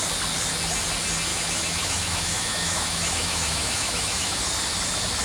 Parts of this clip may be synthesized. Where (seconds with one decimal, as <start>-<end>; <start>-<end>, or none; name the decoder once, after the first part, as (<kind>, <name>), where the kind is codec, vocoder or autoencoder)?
1.3-4.4 (autoencoder, DAC-VAE)